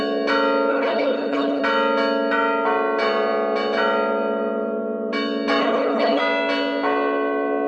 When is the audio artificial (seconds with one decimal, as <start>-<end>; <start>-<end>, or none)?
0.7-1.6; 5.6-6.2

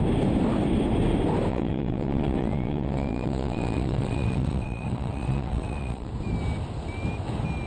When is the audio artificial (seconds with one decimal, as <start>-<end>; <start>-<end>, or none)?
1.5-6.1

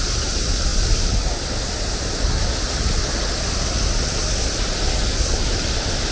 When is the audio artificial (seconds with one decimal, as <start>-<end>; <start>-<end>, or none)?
none

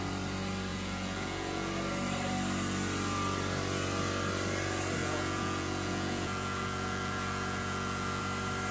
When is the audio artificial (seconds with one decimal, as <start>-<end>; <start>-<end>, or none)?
0.7-1.7; 5.0-8.2